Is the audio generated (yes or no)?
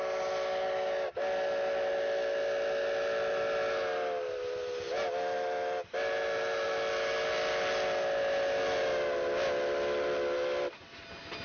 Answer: no